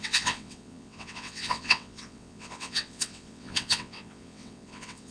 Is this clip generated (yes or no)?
yes